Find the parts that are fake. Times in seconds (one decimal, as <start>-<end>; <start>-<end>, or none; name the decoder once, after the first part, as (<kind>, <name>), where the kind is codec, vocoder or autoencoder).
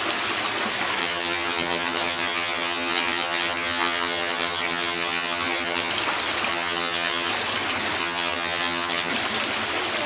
1.0-5.9 (vocoder, HiFi-GAN); 6.5-7.3; 8.0-9.1